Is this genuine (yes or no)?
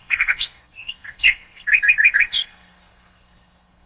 no